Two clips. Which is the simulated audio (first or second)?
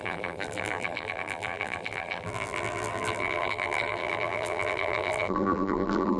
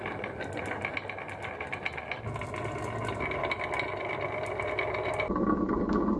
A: first